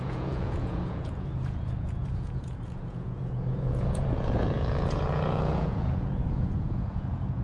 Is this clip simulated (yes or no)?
yes